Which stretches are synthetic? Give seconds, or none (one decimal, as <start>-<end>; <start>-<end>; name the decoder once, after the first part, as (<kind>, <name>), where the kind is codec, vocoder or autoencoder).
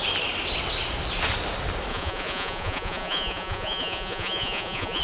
1.9-5.0 (vocoder, Vocos)